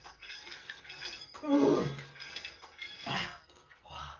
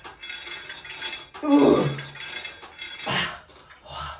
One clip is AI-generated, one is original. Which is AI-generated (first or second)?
first